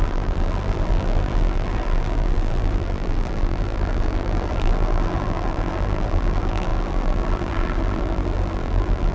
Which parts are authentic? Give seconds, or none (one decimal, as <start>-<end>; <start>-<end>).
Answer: none